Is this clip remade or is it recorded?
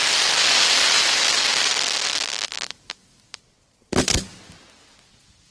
recorded